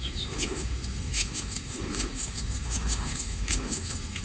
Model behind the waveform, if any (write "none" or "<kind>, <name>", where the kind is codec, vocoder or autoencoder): autoencoder, DAC-VAE